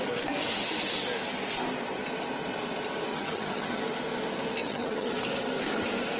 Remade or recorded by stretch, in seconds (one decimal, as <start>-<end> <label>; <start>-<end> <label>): 0.0-3.1 recorded; 3.1-3.8 remade; 3.8-4.6 recorded; 4.6-5.1 remade; 5.1-6.2 recorded